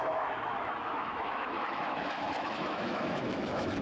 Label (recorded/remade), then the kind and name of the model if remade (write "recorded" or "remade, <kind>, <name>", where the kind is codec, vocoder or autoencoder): remade, autoencoder, DAC-VAE